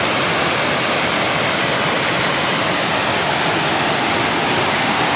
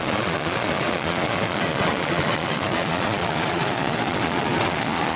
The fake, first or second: second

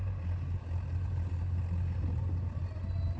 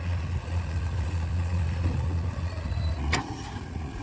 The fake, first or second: second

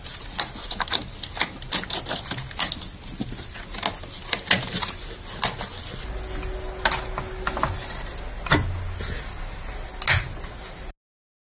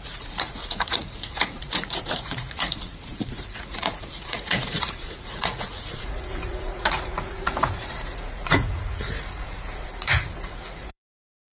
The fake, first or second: second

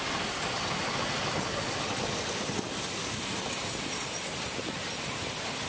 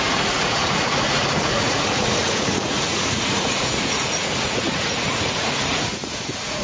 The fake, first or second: second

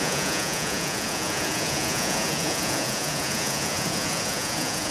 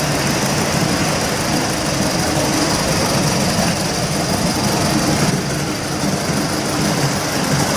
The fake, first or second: first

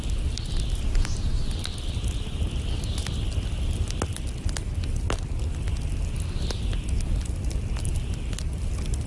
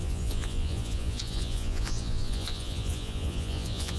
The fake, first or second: second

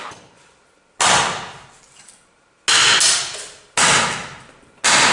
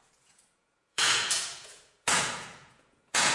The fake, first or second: second